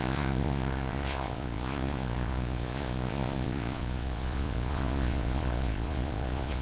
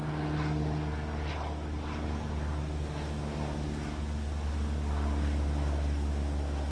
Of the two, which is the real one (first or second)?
second